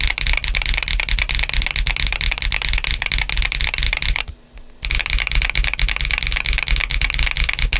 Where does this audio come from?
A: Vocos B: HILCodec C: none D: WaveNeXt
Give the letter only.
C